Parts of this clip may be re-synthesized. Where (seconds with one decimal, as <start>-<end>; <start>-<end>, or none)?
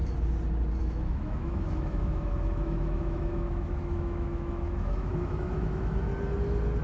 0.8-6.1